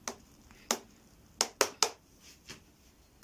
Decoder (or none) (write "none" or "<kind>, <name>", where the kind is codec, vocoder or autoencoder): none